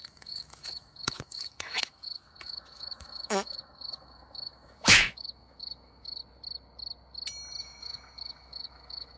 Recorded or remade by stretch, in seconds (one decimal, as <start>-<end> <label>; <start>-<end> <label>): 0.0-6.2 remade; 6.2-7.6 recorded; 7.6-9.2 remade